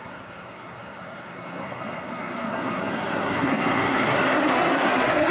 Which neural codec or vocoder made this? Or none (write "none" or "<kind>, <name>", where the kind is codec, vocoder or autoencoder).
codec, SNAC